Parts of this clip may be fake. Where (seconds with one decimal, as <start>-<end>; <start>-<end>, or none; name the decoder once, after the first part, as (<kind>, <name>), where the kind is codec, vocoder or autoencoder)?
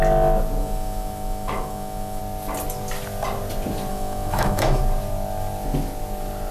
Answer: 0.6-2.2 (autoencoder, DAC-VAE); 3.9-4.8